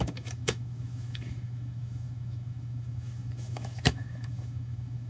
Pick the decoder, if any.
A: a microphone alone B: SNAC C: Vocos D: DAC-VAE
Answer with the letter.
D